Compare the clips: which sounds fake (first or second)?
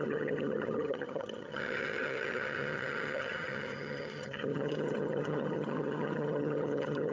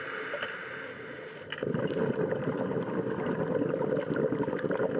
first